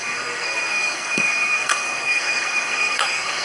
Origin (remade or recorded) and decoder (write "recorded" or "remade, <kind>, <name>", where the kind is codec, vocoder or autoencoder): remade, codec, SNAC